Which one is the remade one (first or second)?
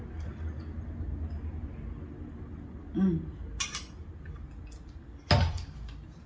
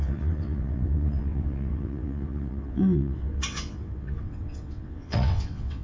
second